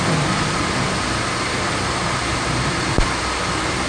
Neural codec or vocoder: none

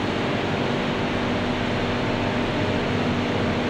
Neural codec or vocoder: none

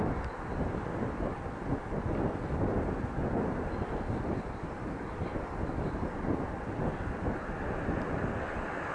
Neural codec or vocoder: none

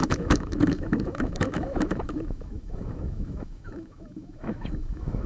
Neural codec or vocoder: autoencoder, DAC-VAE